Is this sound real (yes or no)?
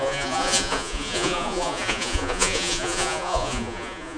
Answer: no